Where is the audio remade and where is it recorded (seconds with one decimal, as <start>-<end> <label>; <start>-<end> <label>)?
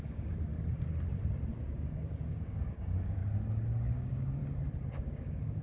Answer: 0.0-0.5 remade; 0.5-1.5 recorded; 1.5-3.2 remade; 3.2-3.9 recorded; 3.9-4.4 remade; 4.4-4.9 recorded; 4.9-5.6 remade